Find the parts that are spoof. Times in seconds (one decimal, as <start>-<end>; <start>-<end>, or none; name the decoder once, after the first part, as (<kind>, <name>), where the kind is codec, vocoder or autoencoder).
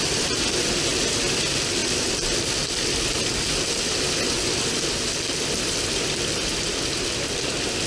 none